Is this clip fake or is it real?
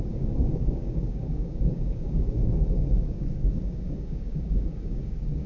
fake